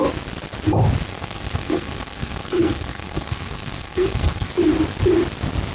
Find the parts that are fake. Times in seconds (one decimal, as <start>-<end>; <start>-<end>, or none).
1.1-4.5